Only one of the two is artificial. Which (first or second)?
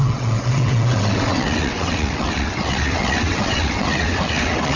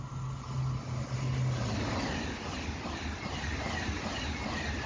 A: first